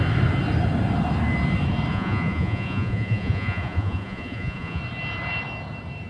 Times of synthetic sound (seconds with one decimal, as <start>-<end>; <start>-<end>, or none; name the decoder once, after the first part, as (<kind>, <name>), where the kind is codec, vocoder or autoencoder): 1.9-4.8 (vocoder, Vocos)